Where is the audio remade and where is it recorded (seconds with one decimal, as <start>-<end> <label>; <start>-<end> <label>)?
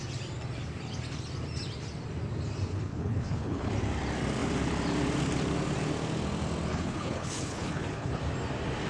0.0-2.7 recorded; 2.7-3.7 remade; 3.7-6.7 recorded; 6.7-8.2 remade; 8.2-8.9 recorded